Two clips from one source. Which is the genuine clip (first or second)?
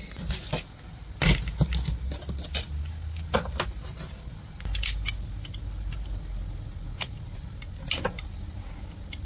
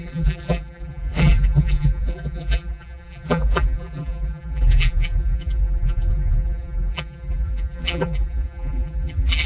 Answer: first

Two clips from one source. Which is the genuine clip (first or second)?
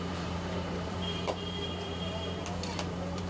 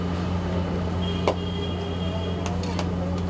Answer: second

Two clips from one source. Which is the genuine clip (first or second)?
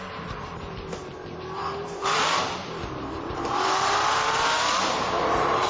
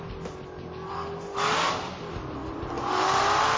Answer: second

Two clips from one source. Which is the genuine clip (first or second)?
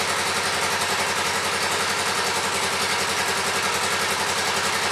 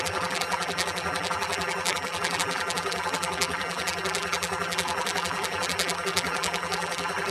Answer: first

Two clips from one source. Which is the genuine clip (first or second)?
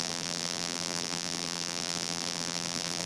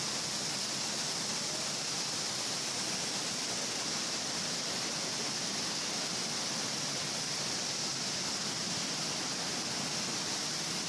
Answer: second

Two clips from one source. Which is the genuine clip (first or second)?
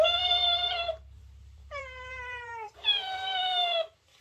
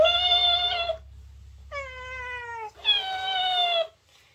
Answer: second